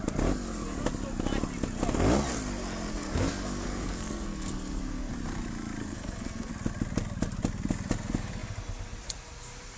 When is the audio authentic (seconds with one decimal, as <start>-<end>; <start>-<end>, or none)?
0.0-2.9; 5.1-5.8; 6.5-9.8